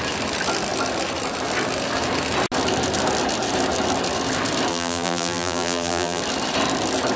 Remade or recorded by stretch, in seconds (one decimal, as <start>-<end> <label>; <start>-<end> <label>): 0.0-4.7 recorded; 4.7-6.2 remade; 6.2-7.2 recorded